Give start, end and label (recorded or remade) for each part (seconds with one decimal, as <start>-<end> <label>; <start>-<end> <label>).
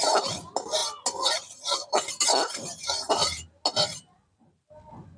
0.0-5.2 recorded